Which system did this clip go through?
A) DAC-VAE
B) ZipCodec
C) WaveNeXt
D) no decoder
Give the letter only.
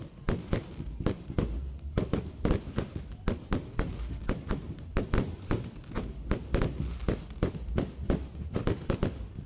D